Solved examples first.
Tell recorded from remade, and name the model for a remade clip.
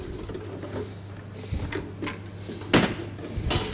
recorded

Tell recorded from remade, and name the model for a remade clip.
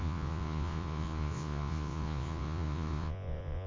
remade, vocoder, Vocos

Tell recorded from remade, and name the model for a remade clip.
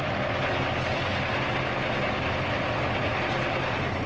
recorded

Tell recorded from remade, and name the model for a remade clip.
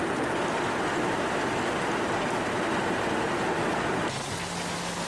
recorded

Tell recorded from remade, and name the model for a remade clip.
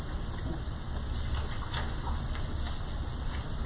recorded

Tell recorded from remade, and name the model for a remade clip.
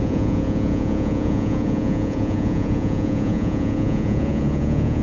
remade, vocoder, Vocos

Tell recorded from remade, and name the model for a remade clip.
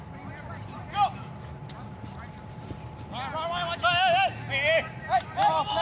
recorded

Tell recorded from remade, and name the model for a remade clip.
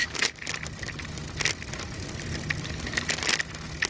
recorded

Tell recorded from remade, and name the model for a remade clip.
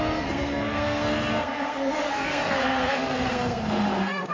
remade, codec, SNAC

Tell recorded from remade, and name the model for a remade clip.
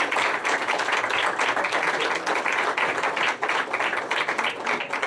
recorded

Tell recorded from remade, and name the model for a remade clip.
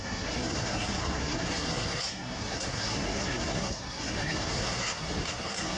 remade, codec, SNAC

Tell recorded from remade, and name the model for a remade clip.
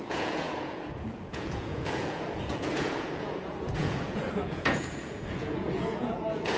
remade, vocoder, Vocos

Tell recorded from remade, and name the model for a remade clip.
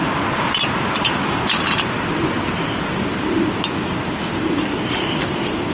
recorded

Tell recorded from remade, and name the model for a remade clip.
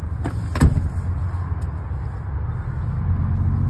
recorded